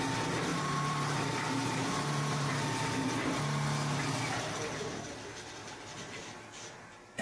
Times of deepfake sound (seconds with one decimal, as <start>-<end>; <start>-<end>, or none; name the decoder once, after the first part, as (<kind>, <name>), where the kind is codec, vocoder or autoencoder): 0.5-2.5 (vocoder, BigVGAN v2); 5.6-6.2